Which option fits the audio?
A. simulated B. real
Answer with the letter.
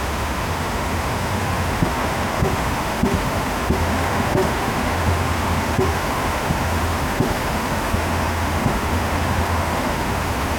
A